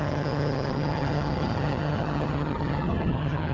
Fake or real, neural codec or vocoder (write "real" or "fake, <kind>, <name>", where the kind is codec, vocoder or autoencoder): fake, vocoder, HiFi-GAN